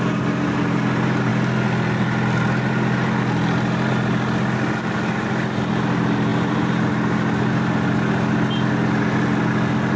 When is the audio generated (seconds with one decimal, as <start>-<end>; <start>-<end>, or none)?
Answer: none